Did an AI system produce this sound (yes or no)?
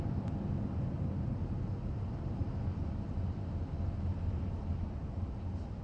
no